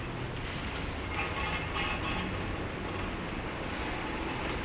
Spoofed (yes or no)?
no